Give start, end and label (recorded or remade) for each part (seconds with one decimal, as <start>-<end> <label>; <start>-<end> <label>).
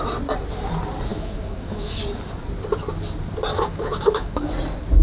0.0-1.1 recorded; 1.1-2.0 remade; 2.0-3.5 recorded; 3.5-4.5 remade; 4.5-5.0 recorded